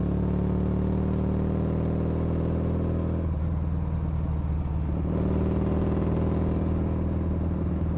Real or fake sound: real